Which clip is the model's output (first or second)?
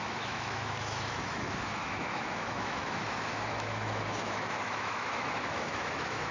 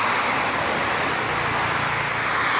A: first